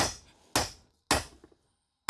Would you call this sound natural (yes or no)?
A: yes